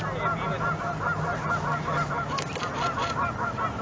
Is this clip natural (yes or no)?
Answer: yes